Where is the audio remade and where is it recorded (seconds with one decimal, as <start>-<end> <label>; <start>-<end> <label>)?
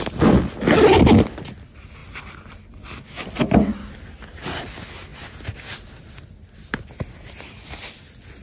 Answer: 0.0-8.4 recorded